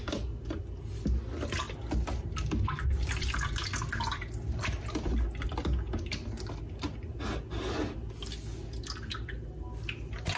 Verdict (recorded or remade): recorded